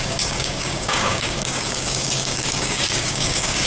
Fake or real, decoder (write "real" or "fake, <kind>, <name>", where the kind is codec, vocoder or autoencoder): fake, codec, DAC